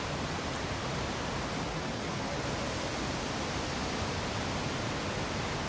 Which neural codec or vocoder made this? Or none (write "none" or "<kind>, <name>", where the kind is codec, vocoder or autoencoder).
none